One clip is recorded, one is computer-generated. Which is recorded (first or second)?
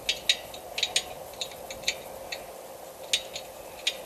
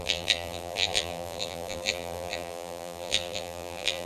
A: first